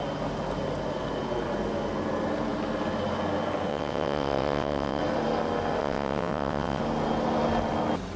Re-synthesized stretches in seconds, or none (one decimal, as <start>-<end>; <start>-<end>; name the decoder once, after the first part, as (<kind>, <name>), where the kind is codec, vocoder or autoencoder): 3.7-5.0 (vocoder, WaveNeXt); 5.8-6.8